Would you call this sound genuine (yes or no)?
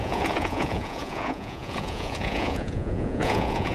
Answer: no